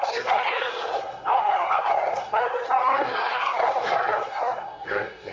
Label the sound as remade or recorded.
remade